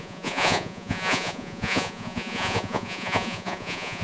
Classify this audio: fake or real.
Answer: fake